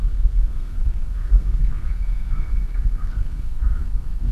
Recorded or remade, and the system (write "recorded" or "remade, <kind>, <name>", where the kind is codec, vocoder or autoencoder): remade, codec, SNAC